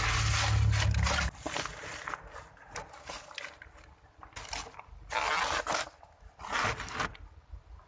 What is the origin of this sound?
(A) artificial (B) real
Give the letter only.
B